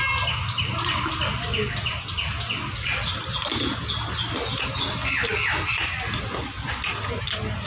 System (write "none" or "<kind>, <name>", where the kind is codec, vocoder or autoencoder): none